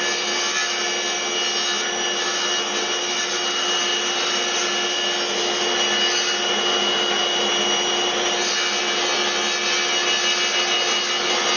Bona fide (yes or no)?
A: yes